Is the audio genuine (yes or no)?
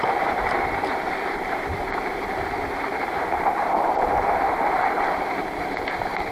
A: no